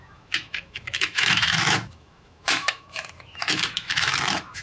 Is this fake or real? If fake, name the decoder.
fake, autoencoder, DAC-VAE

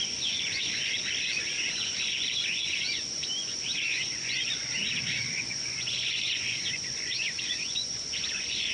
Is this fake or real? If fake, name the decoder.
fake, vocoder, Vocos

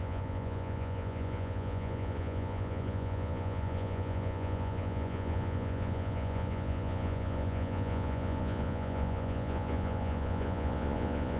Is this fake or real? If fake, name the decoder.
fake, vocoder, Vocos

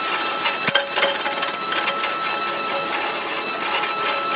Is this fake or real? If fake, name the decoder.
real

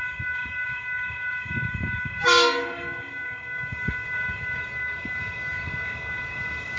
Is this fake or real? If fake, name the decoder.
fake, codec, DAC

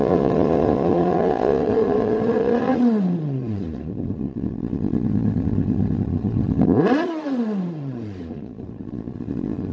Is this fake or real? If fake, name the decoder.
fake, vocoder, Vocos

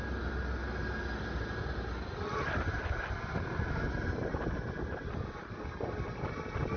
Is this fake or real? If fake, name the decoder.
real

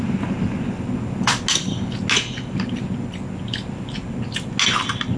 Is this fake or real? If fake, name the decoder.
real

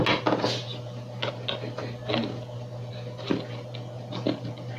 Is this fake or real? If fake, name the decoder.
real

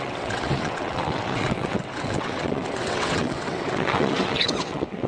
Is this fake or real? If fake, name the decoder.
fake, vocoder, WaveNeXt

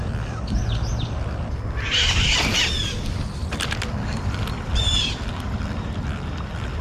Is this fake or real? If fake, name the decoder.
real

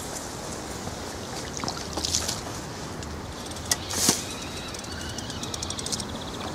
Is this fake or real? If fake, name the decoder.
real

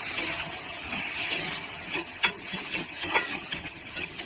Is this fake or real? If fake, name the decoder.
fake, vocoder, HiFi-GAN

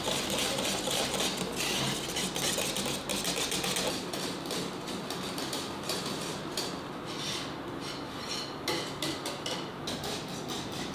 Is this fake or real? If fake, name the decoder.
real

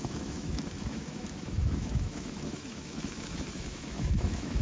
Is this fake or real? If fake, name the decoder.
fake, autoencoder, DAC-VAE